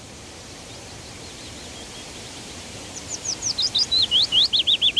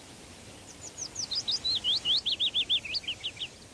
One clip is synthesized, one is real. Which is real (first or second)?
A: second